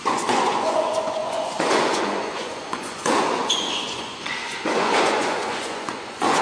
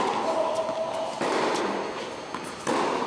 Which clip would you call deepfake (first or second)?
first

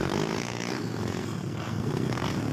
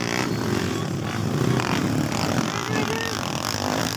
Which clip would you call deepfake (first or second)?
first